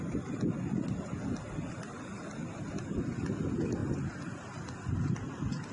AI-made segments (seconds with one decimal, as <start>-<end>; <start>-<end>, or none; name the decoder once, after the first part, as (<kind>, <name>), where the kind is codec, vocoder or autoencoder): none